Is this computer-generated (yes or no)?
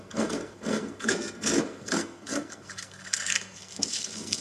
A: yes